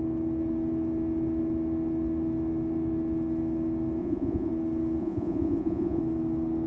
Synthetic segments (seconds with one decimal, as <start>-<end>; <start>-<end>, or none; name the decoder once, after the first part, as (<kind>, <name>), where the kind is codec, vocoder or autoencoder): 4.0-4.5 (vocoder, Vocos); 5.0-6.0